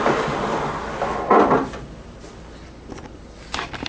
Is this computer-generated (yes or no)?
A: no